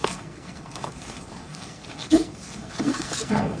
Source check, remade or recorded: remade